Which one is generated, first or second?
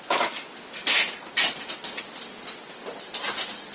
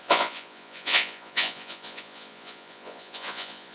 second